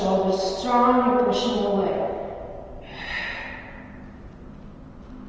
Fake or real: real